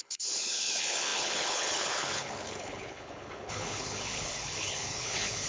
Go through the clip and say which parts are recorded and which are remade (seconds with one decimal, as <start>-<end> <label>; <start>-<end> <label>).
0.0-5.5 remade